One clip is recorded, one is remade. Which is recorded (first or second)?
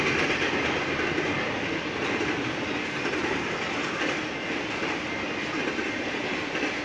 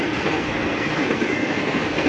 first